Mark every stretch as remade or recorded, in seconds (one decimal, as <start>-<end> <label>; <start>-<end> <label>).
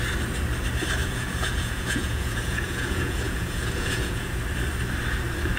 0.0-1.0 recorded; 1.0-4.4 remade; 4.4-5.6 recorded